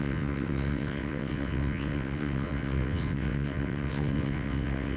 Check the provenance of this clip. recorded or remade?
remade